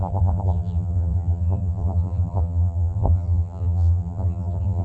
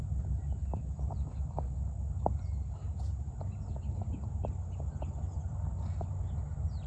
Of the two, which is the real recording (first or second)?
second